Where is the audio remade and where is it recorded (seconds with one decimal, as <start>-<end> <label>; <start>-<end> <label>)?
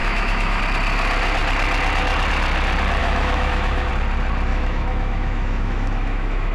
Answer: 0.0-0.6 remade; 0.6-3.0 recorded; 3.0-3.9 remade; 3.9-4.5 recorded; 4.5-6.5 remade